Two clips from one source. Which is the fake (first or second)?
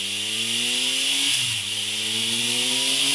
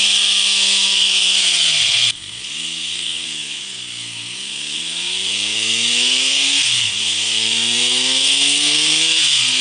second